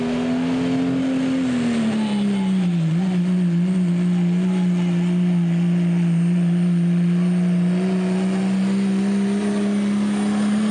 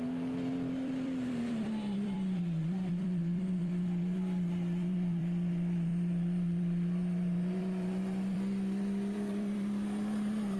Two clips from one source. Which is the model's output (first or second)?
second